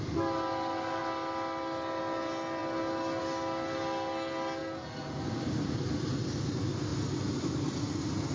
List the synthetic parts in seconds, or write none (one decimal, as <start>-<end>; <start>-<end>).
none